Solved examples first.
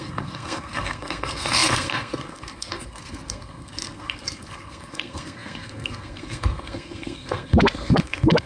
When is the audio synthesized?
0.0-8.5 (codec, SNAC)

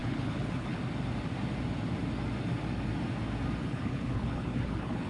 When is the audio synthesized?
0.0-0.8 (codec, HILCodec); 3.6-5.1